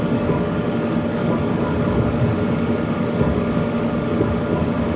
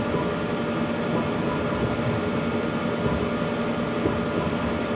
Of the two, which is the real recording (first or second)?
second